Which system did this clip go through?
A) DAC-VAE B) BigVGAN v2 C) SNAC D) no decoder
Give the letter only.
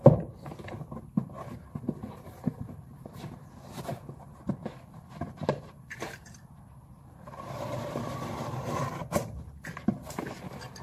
B